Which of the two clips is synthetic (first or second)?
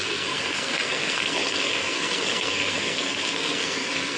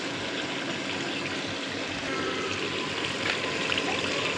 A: first